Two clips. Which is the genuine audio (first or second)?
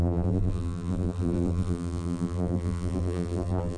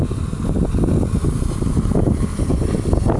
second